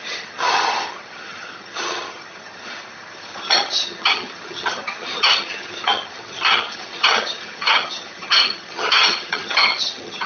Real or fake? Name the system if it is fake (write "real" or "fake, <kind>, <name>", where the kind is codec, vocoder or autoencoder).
fake, vocoder, HiFi-GAN